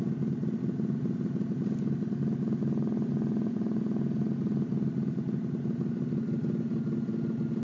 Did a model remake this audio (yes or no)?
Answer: no